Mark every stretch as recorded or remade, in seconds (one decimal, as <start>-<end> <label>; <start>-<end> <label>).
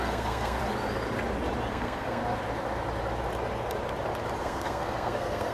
0.0-0.6 remade; 0.6-1.7 recorded; 1.7-2.2 remade; 2.2-4.4 recorded; 4.4-5.5 remade